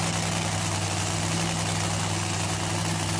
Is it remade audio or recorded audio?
recorded